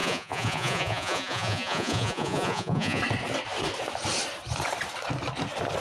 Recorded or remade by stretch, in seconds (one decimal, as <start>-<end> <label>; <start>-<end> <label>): 0.0-3.0 remade; 3.0-5.8 recorded